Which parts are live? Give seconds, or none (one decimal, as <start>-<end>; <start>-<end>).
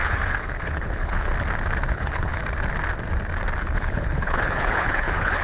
1.3-1.9; 2.4-3.6